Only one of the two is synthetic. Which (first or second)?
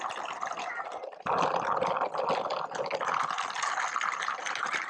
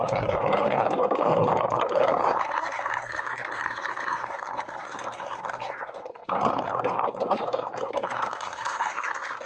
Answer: second